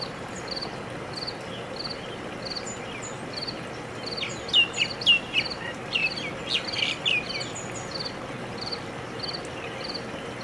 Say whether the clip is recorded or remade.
recorded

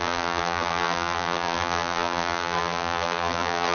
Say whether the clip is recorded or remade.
remade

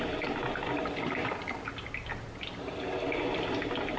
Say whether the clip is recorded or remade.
recorded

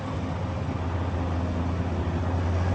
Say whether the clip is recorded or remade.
recorded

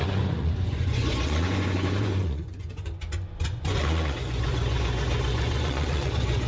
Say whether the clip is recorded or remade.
remade